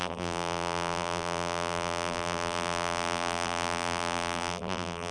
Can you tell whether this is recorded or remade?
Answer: remade